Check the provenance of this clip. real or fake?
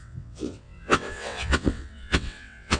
fake